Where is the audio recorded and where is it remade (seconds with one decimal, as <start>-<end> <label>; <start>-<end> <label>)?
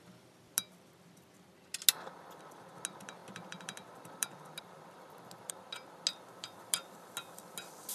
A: 0.0-3.2 recorded; 3.2-5.5 remade; 5.5-6.3 recorded; 6.3-7.1 remade; 7.1-7.9 recorded